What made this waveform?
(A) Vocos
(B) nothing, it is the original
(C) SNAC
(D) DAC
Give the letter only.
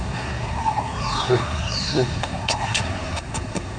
C